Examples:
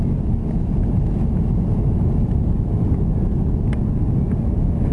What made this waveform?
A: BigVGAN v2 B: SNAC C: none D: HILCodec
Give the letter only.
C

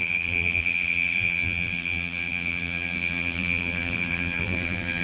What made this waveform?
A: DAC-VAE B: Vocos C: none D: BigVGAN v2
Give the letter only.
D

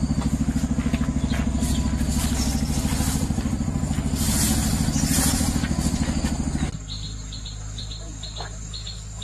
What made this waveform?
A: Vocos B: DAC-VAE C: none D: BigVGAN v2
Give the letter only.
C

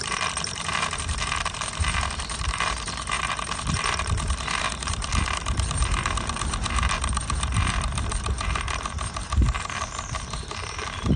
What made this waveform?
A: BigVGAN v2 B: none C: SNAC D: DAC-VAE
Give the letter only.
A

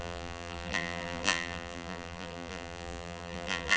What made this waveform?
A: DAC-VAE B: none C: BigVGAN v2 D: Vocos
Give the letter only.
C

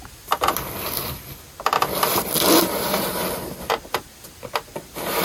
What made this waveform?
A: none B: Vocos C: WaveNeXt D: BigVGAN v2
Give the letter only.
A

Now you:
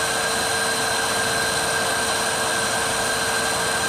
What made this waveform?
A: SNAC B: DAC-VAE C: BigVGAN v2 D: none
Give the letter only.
D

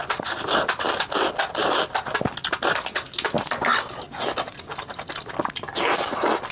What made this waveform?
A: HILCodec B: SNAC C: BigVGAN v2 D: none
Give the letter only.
D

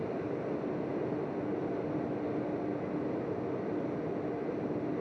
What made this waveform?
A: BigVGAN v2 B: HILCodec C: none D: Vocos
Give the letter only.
C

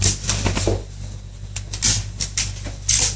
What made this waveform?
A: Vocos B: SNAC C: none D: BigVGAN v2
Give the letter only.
C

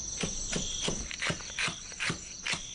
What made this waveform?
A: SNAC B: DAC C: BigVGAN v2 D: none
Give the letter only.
D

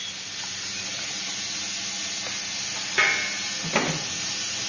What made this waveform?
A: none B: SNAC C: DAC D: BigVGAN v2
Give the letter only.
A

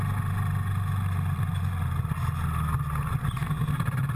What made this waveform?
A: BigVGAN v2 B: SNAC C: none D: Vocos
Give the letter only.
C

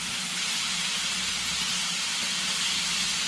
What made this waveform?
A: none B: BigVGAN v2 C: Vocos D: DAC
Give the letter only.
B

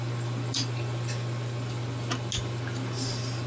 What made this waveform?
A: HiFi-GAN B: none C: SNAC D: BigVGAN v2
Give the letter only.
B